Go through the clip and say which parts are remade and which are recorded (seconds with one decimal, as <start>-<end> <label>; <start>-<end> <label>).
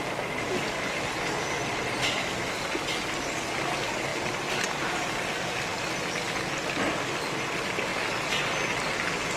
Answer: 0.0-9.4 recorded